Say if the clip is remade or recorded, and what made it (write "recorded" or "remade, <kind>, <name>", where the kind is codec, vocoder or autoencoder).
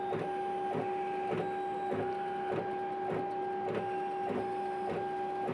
recorded